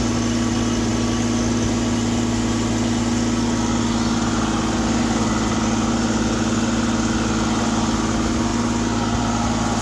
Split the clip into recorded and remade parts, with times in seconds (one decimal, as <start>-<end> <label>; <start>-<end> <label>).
0.0-9.8 recorded

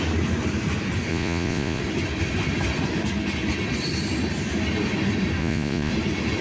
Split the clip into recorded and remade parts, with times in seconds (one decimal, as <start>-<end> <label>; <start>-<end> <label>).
0.0-1.1 recorded; 1.1-1.8 remade; 1.8-5.4 recorded; 5.4-5.9 remade; 5.9-6.4 recorded

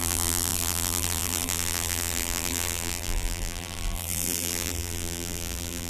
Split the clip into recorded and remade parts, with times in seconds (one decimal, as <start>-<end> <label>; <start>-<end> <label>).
0.0-5.9 remade